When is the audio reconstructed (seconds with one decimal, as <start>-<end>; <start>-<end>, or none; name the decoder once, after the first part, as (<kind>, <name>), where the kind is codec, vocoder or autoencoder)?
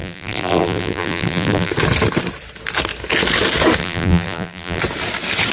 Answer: 0.0-1.7 (vocoder, BigVGAN v2); 3.8-4.8